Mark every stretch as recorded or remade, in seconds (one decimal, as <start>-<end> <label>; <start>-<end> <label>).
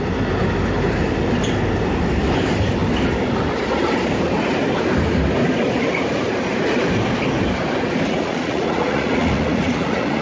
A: 0.0-8.1 recorded; 8.1-10.2 remade